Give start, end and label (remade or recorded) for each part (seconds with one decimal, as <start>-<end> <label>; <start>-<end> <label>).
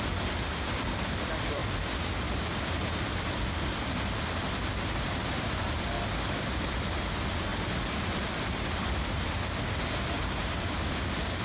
0.0-1.6 remade; 1.6-5.1 recorded; 5.1-7.5 remade; 7.5-8.0 recorded; 8.0-11.4 remade